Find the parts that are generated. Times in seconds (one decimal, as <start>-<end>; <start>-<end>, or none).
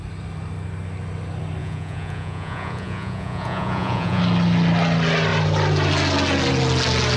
1.6-4.2